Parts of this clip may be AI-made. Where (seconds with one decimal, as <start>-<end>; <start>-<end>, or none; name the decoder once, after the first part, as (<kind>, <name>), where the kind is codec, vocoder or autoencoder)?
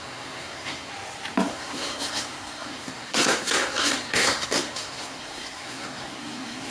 0.0-0.9 (codec, SNAC); 1.5-6.7